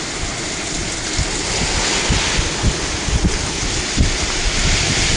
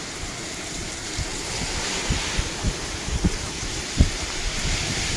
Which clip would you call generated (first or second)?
second